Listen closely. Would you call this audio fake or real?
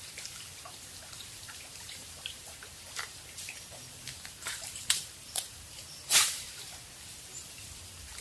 fake